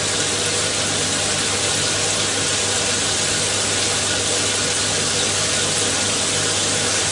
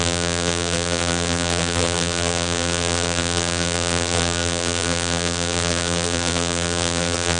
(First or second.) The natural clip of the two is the first